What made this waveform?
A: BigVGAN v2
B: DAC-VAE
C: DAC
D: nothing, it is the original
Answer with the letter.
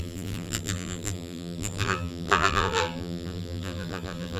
A